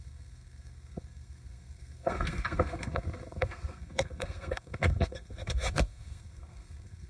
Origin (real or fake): fake